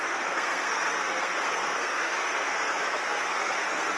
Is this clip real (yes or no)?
no